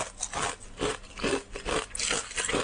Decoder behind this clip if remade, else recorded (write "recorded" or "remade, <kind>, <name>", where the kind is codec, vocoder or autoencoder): recorded